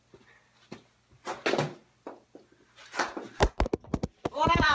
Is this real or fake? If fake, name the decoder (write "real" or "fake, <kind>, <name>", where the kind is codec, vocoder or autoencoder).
real